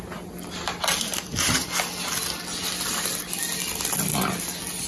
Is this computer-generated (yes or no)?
no